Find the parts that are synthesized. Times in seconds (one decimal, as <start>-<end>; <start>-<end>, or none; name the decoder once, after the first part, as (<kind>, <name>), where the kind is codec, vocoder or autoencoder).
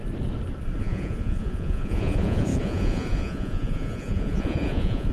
0.8-5.1 (vocoder, Vocos)